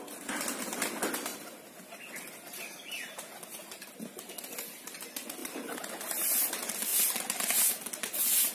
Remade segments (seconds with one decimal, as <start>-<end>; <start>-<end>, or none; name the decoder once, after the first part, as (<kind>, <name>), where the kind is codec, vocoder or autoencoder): none